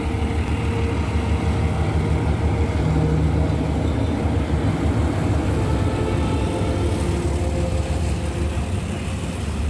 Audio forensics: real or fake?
real